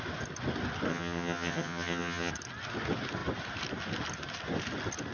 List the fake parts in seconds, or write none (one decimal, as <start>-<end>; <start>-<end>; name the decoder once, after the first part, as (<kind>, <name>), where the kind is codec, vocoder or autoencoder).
0.9-2.3 (vocoder, HiFi-GAN)